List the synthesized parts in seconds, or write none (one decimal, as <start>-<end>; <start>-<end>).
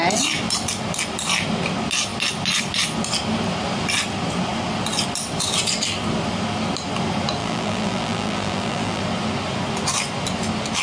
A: 7.4-9.0